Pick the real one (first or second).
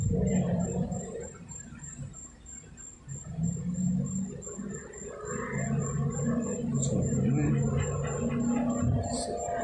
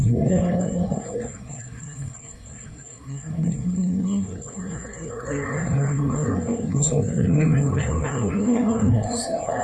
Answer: first